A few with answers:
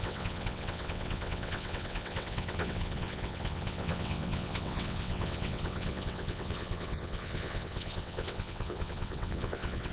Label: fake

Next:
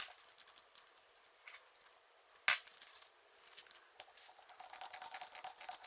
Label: real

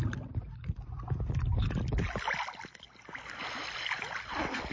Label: real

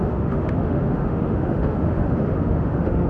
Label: fake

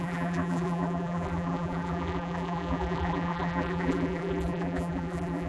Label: fake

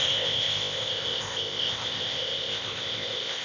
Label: fake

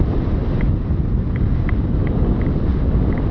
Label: real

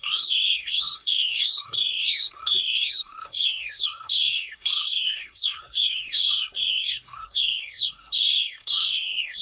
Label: fake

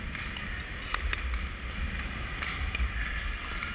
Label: real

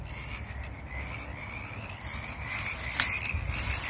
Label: real